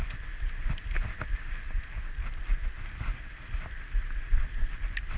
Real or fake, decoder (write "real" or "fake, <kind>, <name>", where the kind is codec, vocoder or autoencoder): real